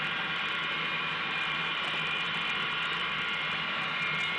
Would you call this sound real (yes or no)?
yes